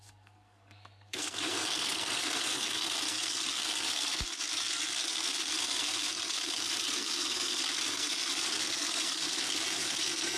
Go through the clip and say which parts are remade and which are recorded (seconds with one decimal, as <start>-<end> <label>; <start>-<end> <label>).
0.0-10.4 remade